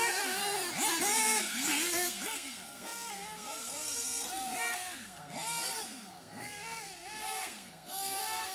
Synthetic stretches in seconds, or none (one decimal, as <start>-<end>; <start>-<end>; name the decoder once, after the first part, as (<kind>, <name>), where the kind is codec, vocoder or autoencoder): 0.0-0.4 (codec, SNAC); 1.0-8.5